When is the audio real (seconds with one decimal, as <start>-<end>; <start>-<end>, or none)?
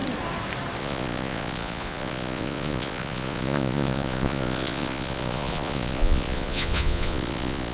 0.0-0.8